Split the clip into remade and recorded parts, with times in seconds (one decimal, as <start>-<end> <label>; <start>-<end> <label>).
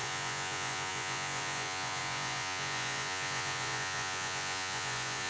0.0-5.3 remade